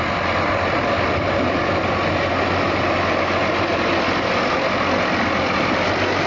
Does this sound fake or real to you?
real